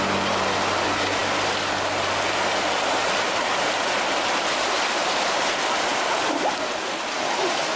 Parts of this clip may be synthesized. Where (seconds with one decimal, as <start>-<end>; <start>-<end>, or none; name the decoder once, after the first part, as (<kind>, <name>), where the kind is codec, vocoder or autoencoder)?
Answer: none

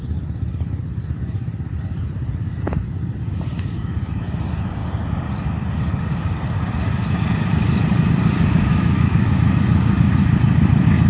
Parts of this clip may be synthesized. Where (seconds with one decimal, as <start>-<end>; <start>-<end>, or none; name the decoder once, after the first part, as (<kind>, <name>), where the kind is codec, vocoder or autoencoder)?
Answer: 8.7-9.3 (autoencoder, DAC-VAE)

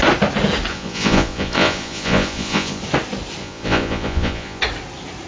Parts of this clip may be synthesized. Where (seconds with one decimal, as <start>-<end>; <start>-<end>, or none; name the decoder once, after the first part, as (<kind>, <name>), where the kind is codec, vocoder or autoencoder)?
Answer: 0.7-2.8 (vocoder, Vocos); 3.4-4.6

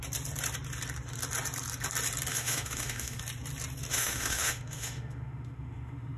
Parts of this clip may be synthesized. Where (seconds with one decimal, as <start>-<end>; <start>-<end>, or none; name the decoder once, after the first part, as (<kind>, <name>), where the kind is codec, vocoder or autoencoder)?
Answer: 2.3-3.2 (autoencoder, DAC-VAE); 3.9-6.2

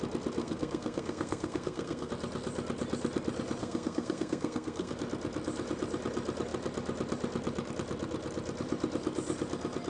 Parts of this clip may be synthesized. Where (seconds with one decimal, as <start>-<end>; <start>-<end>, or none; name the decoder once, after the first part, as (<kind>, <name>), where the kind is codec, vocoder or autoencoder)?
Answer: 0.4-2.1 (codec, SNAC); 3.6-5.0